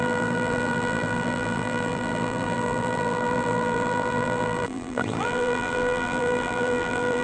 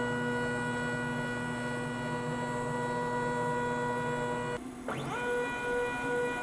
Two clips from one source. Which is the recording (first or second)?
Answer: second